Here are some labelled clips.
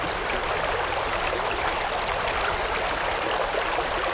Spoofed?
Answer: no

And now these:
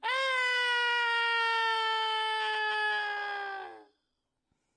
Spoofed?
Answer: no